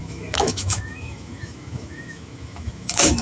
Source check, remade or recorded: remade